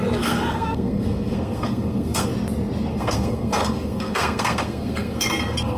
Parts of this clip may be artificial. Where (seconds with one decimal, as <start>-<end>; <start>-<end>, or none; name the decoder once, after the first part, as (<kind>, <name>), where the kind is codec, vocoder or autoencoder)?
0.0-2.3 (codec, SNAC); 2.9-5.8